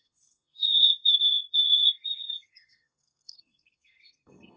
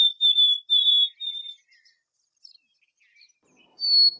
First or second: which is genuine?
second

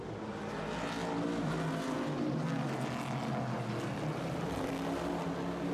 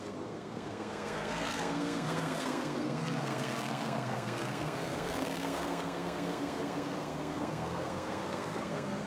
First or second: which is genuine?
first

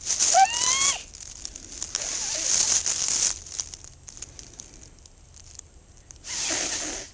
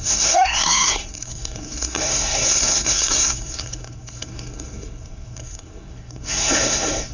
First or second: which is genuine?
first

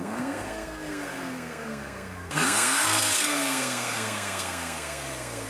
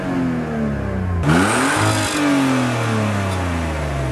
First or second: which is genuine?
second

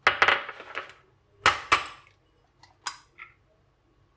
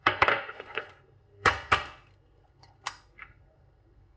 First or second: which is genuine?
first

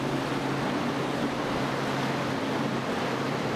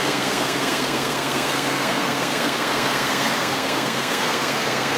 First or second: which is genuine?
first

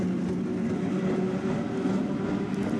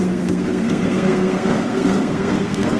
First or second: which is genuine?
first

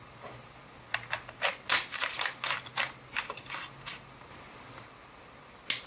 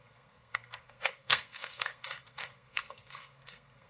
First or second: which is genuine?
first